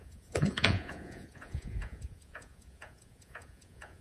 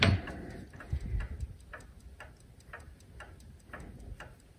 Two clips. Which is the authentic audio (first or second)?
second